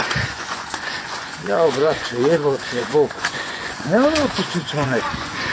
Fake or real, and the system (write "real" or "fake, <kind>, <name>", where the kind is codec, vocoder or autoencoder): fake, vocoder, Vocos